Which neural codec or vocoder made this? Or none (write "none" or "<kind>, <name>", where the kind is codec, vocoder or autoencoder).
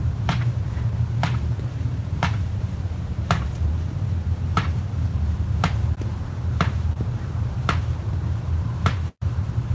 vocoder, BigVGAN v2